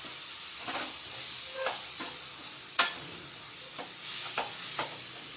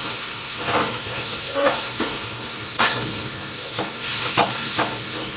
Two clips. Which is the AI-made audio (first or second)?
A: second